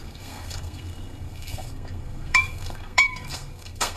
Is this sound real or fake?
fake